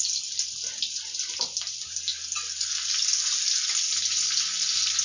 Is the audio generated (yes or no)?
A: no